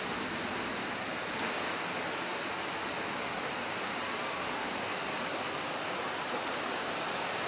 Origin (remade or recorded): recorded